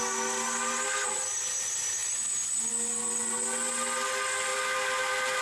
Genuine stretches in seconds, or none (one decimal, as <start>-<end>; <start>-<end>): 0.0-5.4